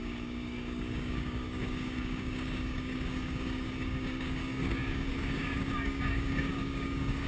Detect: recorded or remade remade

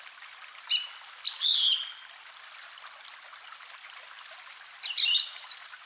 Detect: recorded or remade recorded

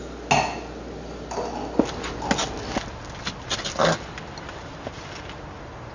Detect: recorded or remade recorded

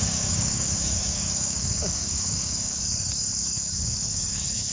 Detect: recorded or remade remade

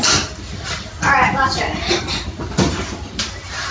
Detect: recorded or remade recorded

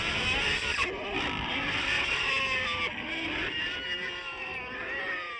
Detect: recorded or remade recorded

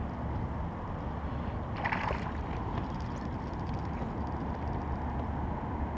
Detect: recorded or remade recorded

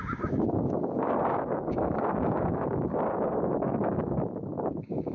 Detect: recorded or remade remade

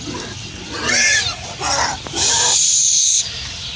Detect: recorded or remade recorded